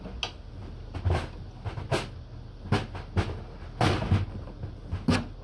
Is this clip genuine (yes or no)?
yes